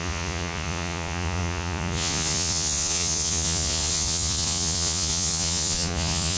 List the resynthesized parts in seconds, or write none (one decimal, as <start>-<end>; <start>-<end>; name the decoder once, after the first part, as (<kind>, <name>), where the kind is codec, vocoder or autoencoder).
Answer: 0.0-6.4 (vocoder, Vocos)